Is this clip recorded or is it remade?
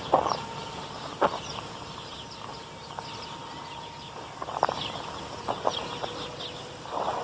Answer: recorded